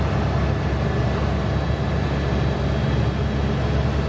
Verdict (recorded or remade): recorded